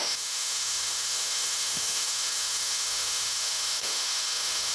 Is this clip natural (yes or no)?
no